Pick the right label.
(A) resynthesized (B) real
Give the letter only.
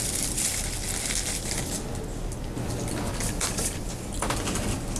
B